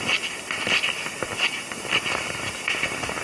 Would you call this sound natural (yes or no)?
yes